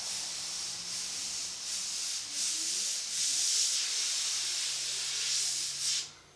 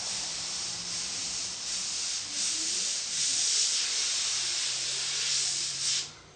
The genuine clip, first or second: first